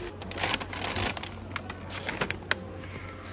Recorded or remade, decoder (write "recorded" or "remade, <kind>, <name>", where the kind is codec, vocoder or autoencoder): recorded